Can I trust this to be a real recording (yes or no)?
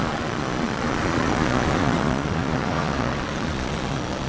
no